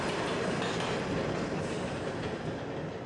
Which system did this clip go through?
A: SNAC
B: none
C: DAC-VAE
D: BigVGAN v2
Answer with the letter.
B